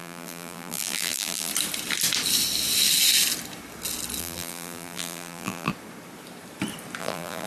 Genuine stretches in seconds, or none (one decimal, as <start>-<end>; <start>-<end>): 1.5-4.2; 5.7-7.0